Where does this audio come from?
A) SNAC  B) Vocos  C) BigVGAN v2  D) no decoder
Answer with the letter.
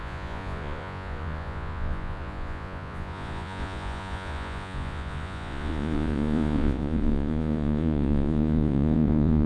B